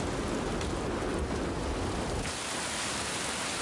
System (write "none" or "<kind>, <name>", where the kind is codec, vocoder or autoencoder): none